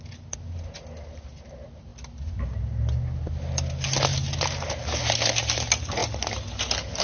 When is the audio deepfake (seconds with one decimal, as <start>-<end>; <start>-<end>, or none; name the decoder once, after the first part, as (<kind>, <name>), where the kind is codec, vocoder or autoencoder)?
none